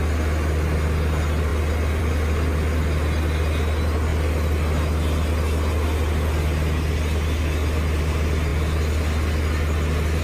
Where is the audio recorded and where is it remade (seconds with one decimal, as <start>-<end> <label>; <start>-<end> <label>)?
0.0-10.2 recorded